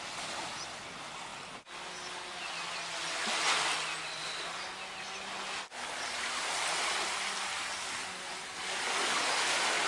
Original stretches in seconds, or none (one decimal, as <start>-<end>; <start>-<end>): 0.0-9.9